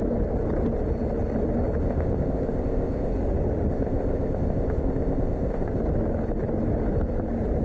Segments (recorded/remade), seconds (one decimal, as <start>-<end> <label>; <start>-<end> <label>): 0.0-1.8 recorded; 1.8-3.1 remade; 3.1-3.7 recorded; 3.7-5.8 remade; 5.8-7.6 recorded